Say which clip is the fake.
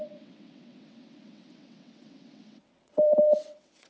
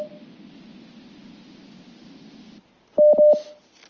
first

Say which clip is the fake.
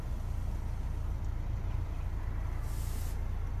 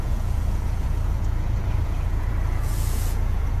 second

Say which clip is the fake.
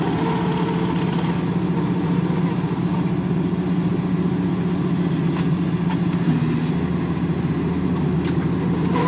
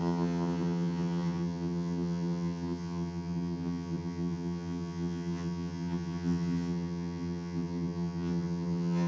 second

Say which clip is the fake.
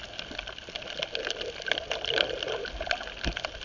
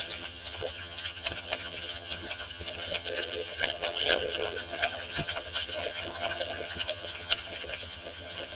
second